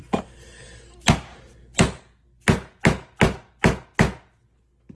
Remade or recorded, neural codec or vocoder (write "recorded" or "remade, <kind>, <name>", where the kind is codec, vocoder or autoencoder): recorded